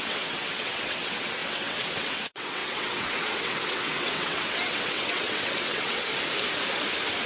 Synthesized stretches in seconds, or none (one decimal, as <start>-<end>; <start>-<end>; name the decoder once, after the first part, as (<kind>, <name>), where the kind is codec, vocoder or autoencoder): 0.0-6.1 (vocoder, WaveNeXt)